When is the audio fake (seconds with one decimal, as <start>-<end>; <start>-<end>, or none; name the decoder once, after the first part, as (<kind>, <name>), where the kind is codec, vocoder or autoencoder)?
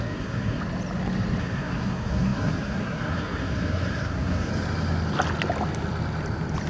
0.0-0.6 (codec, SNAC); 1.4-4.5